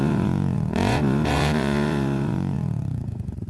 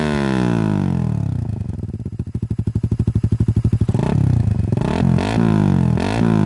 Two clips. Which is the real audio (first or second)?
second